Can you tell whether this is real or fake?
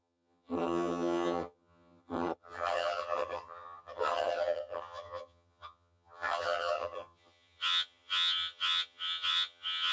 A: fake